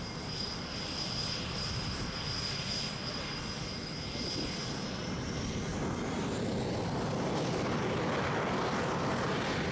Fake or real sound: real